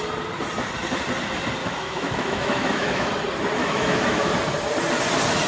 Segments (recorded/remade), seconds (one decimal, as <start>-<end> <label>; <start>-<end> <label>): 0.0-1.6 recorded; 1.6-3.1 remade; 3.1-3.6 recorded; 3.6-4.3 remade; 4.3-5.5 recorded